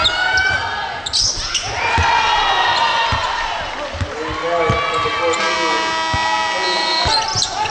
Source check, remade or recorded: recorded